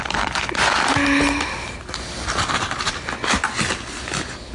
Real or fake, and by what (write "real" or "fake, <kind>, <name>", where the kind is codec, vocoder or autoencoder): real